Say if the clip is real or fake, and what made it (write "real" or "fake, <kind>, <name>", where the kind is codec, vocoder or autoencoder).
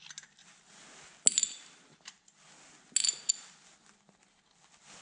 real